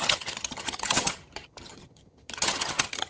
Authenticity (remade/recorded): remade